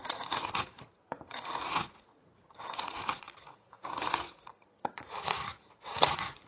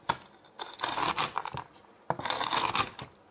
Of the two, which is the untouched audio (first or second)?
second